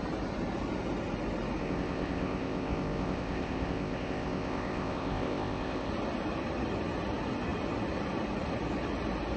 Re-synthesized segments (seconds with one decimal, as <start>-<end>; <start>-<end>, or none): 1.6-5.9